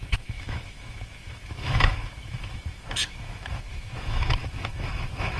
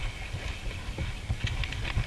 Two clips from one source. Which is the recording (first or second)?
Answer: second